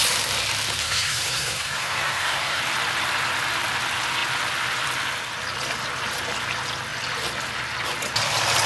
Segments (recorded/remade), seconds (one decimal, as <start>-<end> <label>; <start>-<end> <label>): 0.0-0.8 recorded; 0.8-2.6 remade; 2.6-8.7 recorded